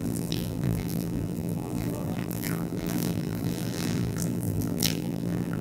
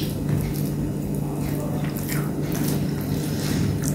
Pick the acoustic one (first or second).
second